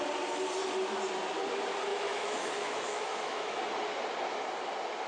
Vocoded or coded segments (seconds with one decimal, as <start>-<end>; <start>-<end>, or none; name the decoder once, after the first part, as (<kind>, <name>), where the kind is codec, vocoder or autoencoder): 1.9-3.6 (autoencoder, DAC-VAE)